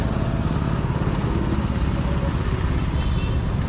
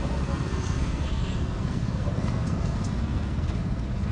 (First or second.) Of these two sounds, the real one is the first